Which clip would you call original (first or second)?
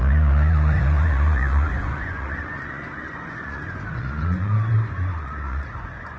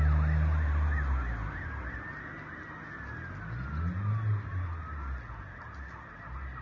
second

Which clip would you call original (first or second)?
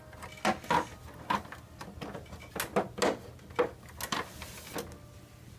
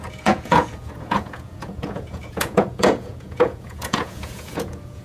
first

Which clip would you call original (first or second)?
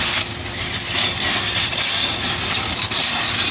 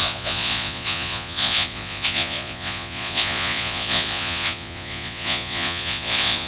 first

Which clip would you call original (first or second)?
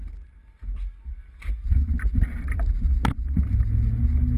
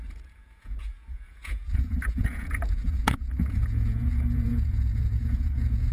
first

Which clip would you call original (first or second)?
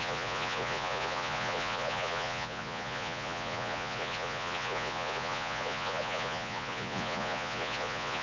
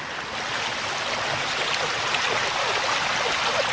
second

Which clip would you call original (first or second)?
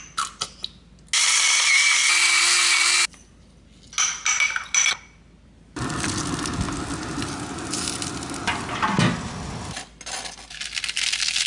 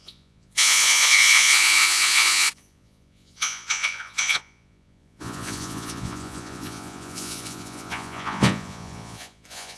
first